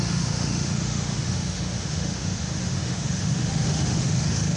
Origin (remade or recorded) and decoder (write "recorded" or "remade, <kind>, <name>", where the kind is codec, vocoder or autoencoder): remade, autoencoder, DAC-VAE